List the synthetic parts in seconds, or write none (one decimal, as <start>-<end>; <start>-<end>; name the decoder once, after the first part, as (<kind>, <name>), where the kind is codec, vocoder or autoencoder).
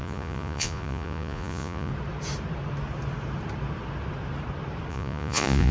0.0-1.9 (vocoder, Vocos); 4.9-5.7